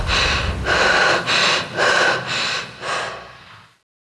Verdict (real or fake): real